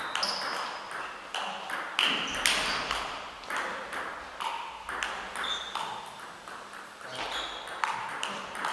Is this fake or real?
real